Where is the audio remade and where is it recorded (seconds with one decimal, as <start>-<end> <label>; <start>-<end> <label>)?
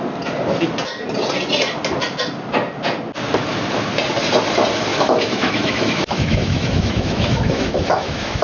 0.0-4.9 recorded; 4.9-8.4 remade